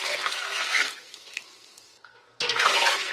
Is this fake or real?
fake